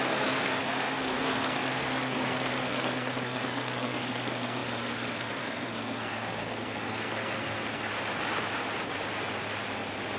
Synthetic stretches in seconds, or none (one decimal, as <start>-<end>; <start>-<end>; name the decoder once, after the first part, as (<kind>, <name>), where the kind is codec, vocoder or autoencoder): 0.0-7.9 (codec, SNAC)